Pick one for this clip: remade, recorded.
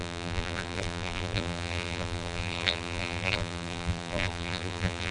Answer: remade